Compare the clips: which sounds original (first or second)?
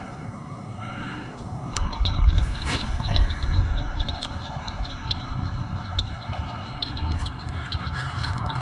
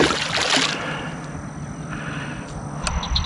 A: second